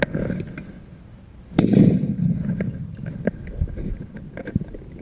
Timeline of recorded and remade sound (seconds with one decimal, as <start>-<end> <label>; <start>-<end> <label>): 0.0-5.0 recorded